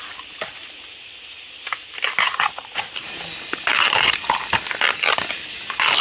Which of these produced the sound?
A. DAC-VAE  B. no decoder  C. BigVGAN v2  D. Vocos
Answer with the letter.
B